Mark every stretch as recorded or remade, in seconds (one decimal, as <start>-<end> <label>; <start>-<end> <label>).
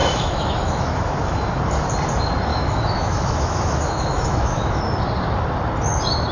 0.0-1.6 remade; 1.6-2.5 recorded; 2.5-4.8 remade; 4.8-6.3 recorded